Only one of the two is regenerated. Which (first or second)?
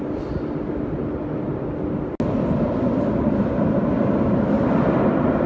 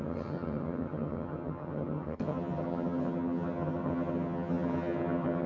second